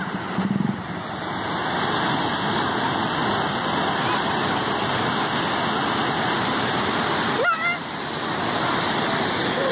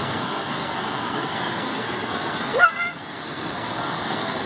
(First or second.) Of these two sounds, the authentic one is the first